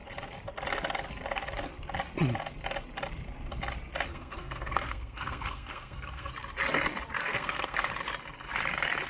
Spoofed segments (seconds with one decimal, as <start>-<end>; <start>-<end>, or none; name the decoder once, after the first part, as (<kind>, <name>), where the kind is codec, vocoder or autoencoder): 4.1-6.3 (codec, SNAC); 7.2-7.9